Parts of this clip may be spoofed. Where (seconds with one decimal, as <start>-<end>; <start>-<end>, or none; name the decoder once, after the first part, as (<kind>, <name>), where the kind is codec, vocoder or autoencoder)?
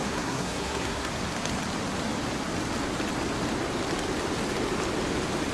0.0-1.1 (codec, SNAC)